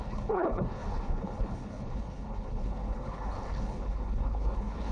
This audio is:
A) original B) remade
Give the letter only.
B